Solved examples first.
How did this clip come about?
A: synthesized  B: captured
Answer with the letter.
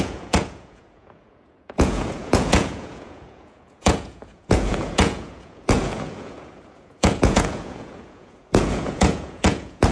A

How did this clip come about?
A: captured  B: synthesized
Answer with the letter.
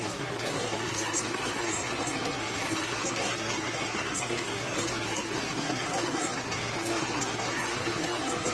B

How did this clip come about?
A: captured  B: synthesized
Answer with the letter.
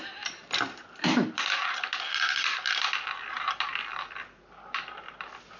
B